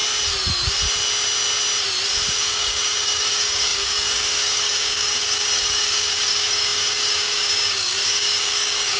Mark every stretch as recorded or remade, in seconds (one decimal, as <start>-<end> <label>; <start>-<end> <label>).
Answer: 0.0-2.4 recorded; 2.4-9.0 remade